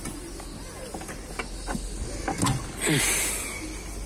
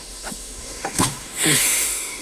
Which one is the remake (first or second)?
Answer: second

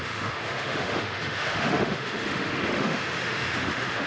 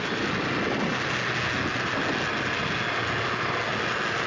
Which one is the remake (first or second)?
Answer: first